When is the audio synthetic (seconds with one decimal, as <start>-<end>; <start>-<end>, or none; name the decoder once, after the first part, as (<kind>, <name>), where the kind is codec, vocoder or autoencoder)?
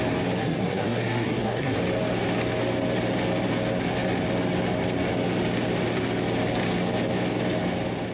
0.4-1.8 (codec, SNAC)